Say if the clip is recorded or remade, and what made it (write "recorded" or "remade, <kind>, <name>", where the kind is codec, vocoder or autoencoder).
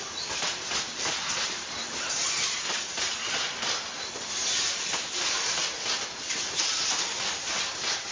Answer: remade, vocoder, BigVGAN v2